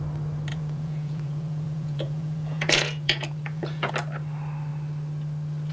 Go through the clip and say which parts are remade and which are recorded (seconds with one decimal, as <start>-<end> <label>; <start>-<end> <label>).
0.0-0.5 recorded; 0.5-3.9 remade; 3.9-5.7 recorded